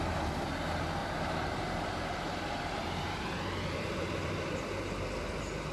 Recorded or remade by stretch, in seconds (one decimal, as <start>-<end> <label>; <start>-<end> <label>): 0.0-1.0 recorded; 1.0-4.4 remade; 4.4-5.7 recorded